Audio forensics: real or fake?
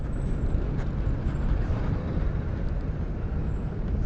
real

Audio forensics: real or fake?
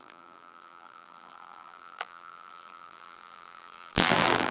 fake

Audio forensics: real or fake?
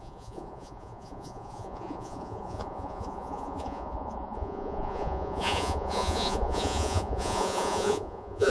fake